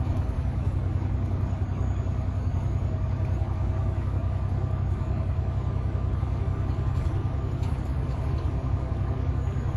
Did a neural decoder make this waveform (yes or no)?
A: yes